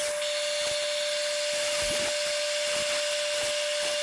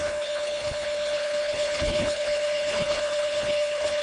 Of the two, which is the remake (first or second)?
second